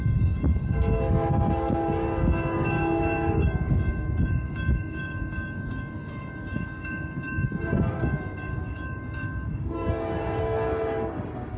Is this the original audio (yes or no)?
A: no